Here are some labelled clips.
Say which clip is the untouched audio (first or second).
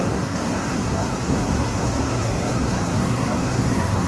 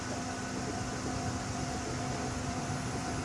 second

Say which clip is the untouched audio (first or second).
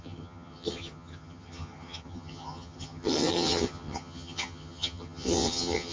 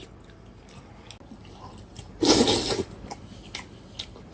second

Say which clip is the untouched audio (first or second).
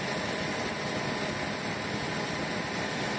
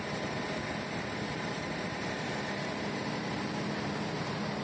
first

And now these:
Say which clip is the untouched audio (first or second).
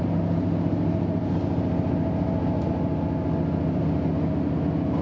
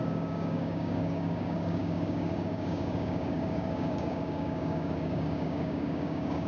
first